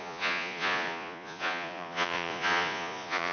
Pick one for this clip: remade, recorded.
remade